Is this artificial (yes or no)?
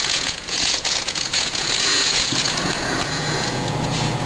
yes